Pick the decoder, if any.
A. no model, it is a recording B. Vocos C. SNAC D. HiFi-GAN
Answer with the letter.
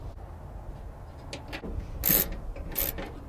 A